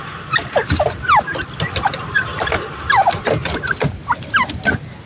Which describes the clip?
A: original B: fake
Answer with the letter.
A